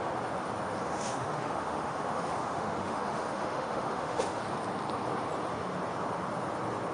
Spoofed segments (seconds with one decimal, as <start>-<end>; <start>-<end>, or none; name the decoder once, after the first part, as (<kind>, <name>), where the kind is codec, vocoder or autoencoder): 0.8-4.4 (autoencoder, DAC-VAE)